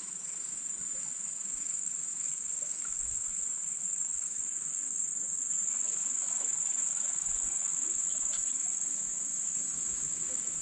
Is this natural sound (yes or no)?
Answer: no